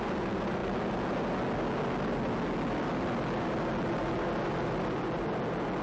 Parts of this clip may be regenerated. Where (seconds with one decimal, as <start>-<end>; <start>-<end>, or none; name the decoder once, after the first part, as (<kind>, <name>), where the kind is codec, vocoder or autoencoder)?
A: none